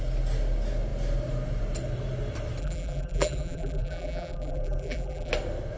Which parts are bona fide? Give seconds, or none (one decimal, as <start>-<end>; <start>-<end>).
0.0-2.6; 5.3-5.8